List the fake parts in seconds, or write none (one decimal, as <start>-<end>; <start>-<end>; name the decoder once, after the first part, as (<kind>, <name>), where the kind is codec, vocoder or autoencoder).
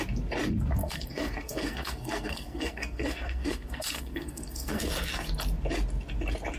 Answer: 0.8-4.8 (codec, SNAC)